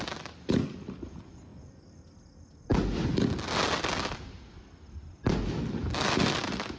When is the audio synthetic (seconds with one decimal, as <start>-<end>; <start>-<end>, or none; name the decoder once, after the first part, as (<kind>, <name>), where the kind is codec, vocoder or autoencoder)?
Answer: none